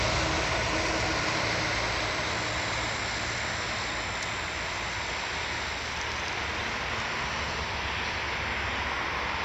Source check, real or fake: real